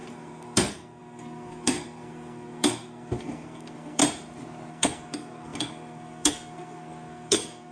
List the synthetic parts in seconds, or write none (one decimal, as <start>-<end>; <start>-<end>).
0.0-4.0; 4.7-7.7